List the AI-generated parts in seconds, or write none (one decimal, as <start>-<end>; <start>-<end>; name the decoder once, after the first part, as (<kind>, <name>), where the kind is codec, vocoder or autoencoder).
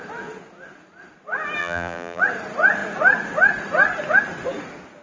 1.6-2.2 (vocoder, BigVGAN v2)